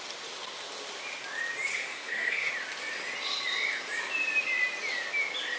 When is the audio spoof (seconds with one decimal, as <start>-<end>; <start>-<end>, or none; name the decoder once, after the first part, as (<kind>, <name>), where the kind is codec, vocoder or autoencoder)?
1.7-2.5 (codec, SNAC)